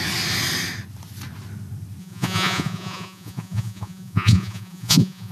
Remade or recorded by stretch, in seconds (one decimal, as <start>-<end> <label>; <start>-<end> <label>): 0.0-2.0 recorded; 2.0-5.3 remade